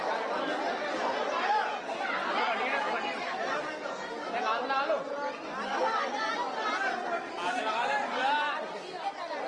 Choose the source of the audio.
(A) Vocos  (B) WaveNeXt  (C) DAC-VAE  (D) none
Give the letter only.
D